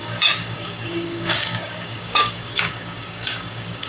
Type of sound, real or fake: fake